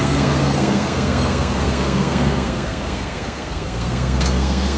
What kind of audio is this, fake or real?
fake